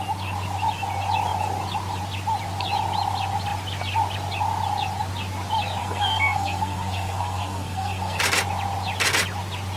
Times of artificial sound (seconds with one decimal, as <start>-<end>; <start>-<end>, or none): 5.8-8.2